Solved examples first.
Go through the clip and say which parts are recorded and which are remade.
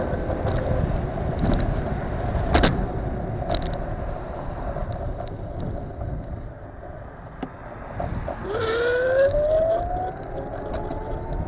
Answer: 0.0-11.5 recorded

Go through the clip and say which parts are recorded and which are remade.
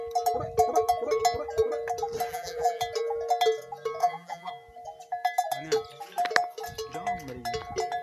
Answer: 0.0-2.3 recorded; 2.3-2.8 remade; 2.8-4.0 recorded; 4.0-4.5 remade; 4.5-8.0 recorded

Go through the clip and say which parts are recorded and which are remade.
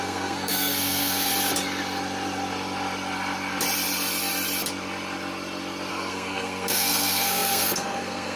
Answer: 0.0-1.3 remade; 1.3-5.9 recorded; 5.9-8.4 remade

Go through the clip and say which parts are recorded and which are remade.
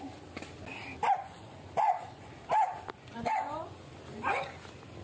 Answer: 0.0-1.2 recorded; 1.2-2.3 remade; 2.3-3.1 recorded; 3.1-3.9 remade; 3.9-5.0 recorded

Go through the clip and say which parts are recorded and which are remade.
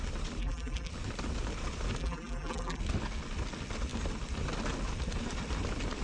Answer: 0.0-0.4 recorded; 0.4-0.9 remade; 0.9-2.0 recorded; 2.0-2.8 remade; 2.8-6.0 recorded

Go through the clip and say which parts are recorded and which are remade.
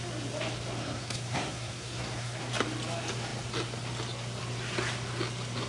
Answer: 0.0-0.8 recorded; 0.8-2.5 remade; 2.5-5.7 recorded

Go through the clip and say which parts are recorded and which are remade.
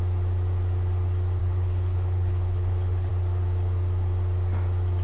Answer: 0.0-1.4 recorded; 1.4-3.1 remade; 3.1-5.0 recorded